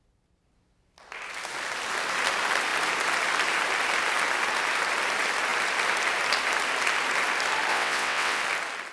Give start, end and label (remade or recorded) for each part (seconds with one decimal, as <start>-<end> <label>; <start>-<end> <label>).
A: 0.0-7.7 recorded; 7.7-8.4 remade; 8.4-8.9 recorded